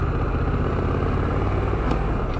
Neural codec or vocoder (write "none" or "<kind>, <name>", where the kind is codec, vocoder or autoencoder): vocoder, BigVGAN v2